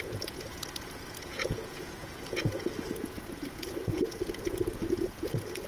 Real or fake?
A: fake